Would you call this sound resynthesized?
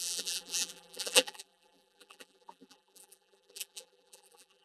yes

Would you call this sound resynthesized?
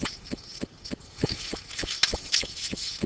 no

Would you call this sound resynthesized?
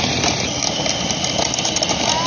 no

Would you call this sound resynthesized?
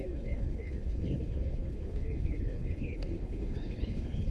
yes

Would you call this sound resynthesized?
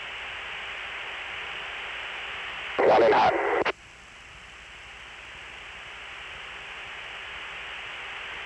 no